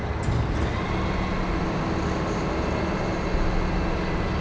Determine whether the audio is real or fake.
real